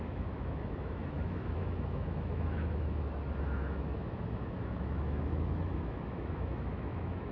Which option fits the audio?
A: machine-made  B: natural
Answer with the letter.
A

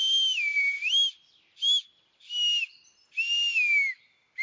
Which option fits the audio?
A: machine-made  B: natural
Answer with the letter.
B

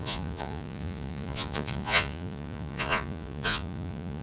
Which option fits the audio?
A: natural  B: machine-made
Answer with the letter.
B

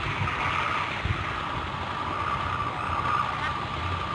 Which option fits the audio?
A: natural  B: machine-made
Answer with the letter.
A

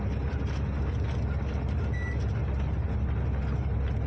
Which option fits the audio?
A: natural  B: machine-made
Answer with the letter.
A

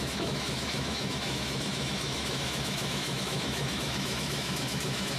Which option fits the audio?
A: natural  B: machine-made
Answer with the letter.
B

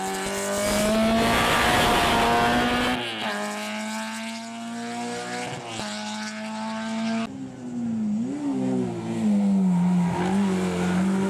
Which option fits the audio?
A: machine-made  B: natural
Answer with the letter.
B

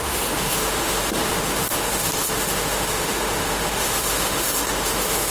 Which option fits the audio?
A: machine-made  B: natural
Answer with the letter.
A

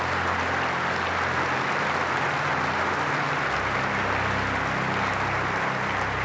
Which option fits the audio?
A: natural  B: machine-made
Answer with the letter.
A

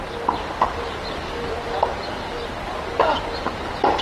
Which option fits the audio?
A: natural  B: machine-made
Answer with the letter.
A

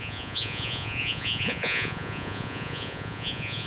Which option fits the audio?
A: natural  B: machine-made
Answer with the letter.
B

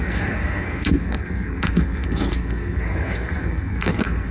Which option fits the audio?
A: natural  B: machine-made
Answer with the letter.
B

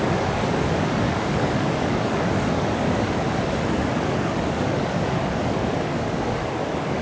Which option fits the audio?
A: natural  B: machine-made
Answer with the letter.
B